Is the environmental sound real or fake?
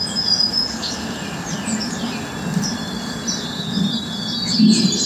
real